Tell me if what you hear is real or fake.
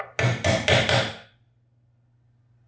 real